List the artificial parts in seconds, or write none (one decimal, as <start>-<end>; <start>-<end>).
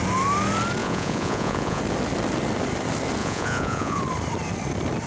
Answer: 0.8-1.8; 3.2-4.0